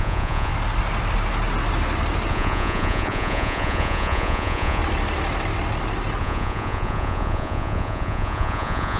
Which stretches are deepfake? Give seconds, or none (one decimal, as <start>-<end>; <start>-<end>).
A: 0.0-0.5; 2.3-4.8; 6.2-9.0